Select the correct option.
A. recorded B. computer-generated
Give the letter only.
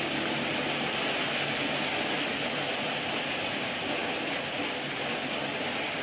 A